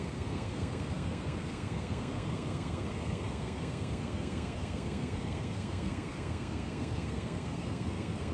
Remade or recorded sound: remade